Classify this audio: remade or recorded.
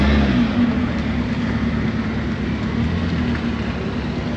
recorded